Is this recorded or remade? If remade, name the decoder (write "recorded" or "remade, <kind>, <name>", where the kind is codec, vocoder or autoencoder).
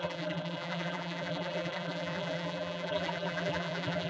remade, vocoder, BigVGAN v2